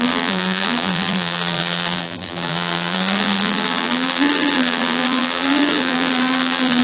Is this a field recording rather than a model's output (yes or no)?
no